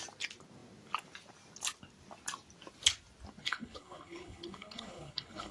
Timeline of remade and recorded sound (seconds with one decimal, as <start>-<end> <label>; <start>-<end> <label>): 0.0-3.4 recorded; 3.4-5.5 remade